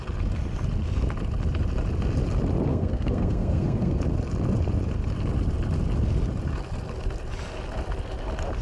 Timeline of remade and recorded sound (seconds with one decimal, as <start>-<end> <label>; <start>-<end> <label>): 0.0-2.7 recorded; 2.7-4.0 remade; 4.0-8.6 recorded